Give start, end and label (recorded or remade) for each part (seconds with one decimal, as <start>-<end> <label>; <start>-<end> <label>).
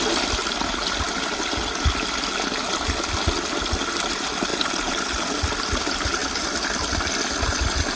0.0-8.0 recorded